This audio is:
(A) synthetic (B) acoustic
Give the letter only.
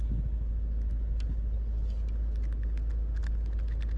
B